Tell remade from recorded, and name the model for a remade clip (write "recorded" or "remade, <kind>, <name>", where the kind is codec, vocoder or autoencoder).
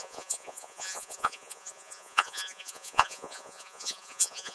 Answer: remade, vocoder, Vocos